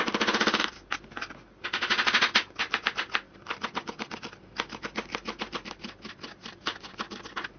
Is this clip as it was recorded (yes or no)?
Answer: yes